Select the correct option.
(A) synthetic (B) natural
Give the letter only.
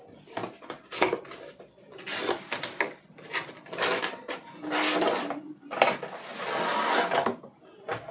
A